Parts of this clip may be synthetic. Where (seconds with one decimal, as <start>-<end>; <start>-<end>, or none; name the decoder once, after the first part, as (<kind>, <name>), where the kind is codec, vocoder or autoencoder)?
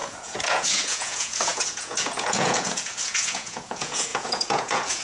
0.0-5.0 (vocoder, Vocos)